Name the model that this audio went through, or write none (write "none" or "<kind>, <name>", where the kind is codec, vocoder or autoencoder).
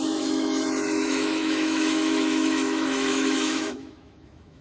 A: autoencoder, DAC-VAE